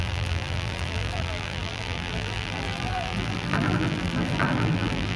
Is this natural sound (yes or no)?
no